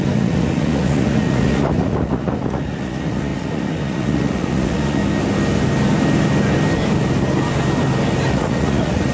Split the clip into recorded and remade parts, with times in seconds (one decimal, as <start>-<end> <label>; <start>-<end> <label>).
0.0-5.0 remade; 5.0-8.3 recorded; 8.3-9.1 remade